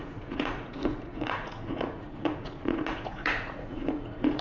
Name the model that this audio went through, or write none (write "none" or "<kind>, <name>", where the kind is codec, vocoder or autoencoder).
vocoder, Vocos